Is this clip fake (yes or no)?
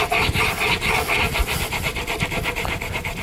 no